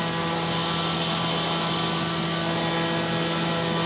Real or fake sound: real